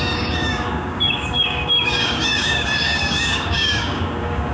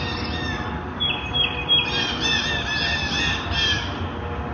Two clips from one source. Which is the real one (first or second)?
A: second